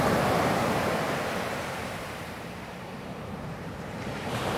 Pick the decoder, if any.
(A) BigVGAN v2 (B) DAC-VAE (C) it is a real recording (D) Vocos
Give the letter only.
A